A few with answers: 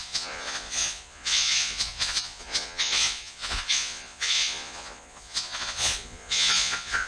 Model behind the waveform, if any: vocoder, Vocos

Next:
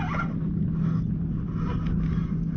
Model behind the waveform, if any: none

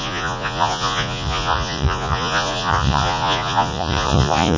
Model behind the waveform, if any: vocoder, Vocos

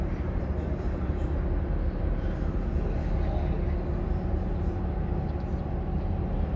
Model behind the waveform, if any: none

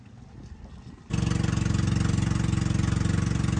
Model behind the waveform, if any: none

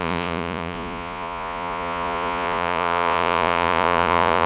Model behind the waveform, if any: vocoder, Vocos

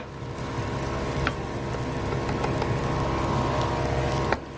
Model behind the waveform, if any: none